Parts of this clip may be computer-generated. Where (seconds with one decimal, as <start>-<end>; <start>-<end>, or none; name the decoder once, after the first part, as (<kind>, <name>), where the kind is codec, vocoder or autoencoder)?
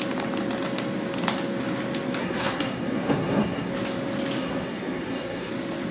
2.2-3.7 (codec, SNAC); 4.4-5.5